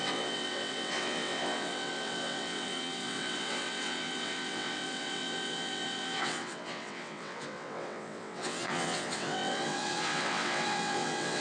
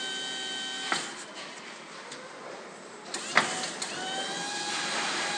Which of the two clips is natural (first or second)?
second